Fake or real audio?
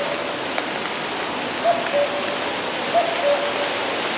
real